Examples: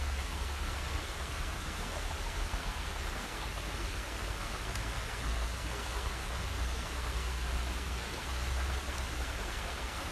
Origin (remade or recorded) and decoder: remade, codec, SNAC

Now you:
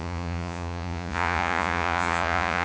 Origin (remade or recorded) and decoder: remade, vocoder, Vocos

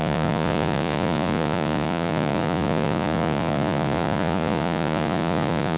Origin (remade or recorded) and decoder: remade, vocoder, Vocos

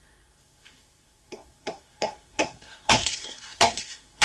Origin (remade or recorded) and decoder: remade, codec, SNAC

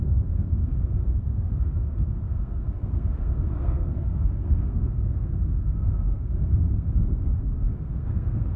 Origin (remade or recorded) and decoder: remade, codec, SNAC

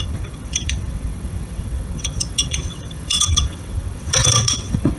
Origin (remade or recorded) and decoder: remade, vocoder, WaveNeXt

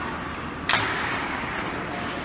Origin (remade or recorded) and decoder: recorded